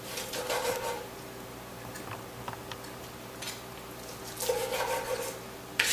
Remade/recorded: recorded